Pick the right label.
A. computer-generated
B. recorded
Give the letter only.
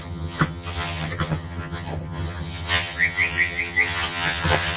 A